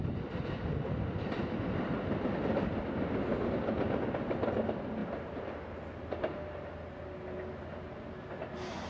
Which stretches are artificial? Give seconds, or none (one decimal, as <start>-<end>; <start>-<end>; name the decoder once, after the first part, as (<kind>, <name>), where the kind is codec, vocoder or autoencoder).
none